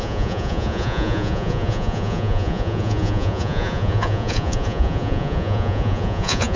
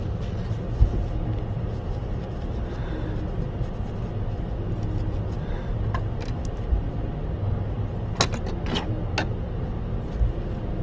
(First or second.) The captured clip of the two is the second